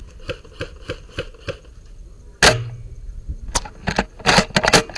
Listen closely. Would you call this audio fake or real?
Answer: real